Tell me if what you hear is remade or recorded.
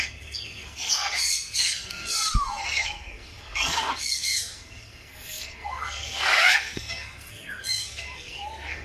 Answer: remade